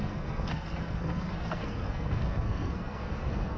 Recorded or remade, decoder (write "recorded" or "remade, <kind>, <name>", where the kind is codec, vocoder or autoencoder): remade, codec, SNAC